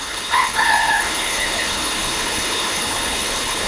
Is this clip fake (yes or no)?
yes